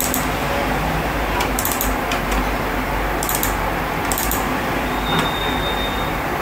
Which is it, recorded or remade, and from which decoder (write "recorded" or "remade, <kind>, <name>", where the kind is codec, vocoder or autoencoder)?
remade, vocoder, BigVGAN v2